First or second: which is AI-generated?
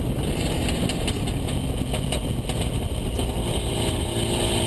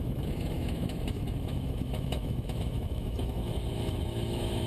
second